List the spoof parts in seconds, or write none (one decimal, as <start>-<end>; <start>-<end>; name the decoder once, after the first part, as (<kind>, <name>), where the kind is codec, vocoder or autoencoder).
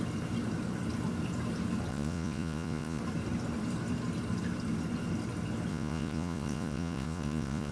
1.9-3.0 (vocoder, Vocos); 5.7-7.7